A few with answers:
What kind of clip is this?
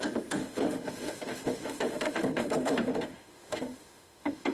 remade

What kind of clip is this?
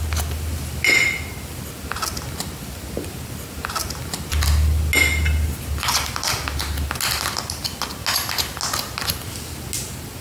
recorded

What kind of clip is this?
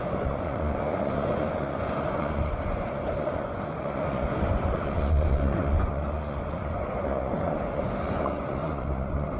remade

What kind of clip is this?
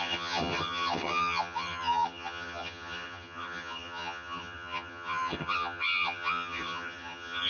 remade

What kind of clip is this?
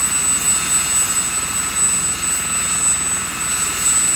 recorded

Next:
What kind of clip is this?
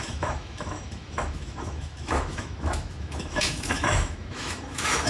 remade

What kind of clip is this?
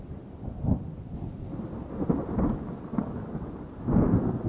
recorded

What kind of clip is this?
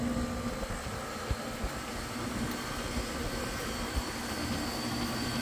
recorded